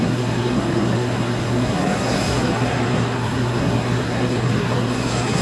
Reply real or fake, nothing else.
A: fake